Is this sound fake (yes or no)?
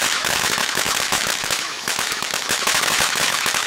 yes